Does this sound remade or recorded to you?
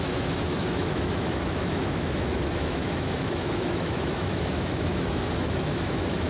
remade